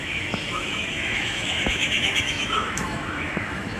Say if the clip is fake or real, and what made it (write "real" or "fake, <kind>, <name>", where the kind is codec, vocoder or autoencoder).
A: fake, autoencoder, DAC-VAE